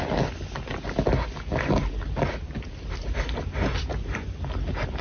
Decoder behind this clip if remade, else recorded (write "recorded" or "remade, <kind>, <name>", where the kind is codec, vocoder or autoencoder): recorded